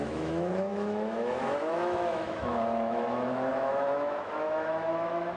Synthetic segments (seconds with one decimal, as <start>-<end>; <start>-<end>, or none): 0.0-5.4